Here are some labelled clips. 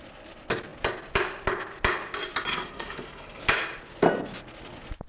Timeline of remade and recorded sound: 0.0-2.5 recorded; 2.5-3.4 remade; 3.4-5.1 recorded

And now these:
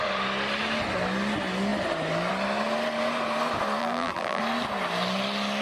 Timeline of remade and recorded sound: 0.0-3.8 recorded; 3.8-4.4 remade; 4.4-5.6 recorded

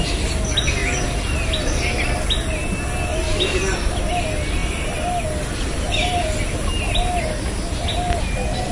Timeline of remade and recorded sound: 0.0-8.7 recorded

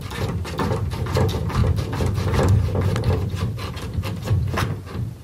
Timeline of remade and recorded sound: 0.0-5.2 recorded

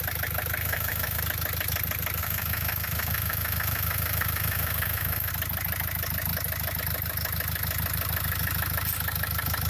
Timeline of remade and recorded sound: 0.0-0.6 recorded; 0.6-1.2 remade; 1.2-2.2 recorded; 2.2-5.3 remade; 5.3-9.7 recorded

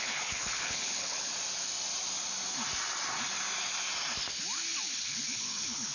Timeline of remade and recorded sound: 0.0-1.3 remade; 1.3-4.8 recorded; 4.8-5.9 remade

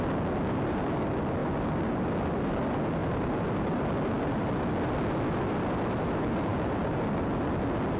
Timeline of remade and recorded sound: 0.0-8.0 recorded